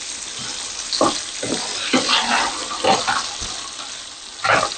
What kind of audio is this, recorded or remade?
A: recorded